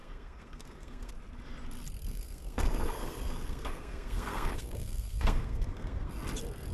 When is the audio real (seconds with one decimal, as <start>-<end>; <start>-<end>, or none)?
1.1-2.1; 6.1-6.7